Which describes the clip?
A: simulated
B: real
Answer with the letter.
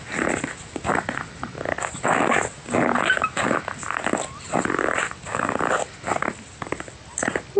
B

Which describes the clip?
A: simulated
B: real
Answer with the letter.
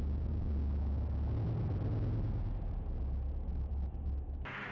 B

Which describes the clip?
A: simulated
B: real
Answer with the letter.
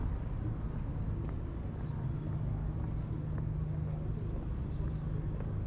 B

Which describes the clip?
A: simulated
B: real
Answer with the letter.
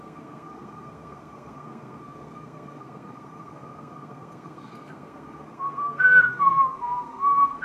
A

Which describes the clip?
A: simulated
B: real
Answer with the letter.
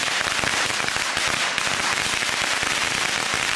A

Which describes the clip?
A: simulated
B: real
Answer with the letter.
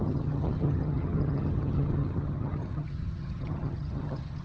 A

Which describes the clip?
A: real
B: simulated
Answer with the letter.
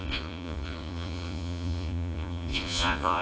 B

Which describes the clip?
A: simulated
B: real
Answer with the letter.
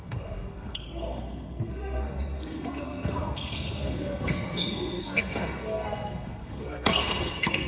A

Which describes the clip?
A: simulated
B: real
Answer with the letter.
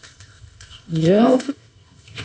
A